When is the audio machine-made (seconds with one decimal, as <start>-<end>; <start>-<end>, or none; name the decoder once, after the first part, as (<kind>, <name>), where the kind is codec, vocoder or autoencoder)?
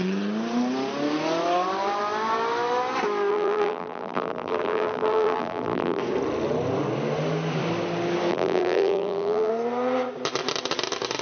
3.3-6.0 (vocoder, BigVGAN v2); 8.3-9.5